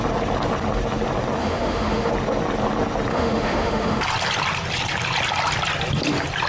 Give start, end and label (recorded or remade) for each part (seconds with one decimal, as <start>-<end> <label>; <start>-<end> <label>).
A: 0.0-1.4 recorded; 1.4-2.1 remade; 2.1-3.1 recorded; 3.1-4.0 remade; 4.0-6.5 recorded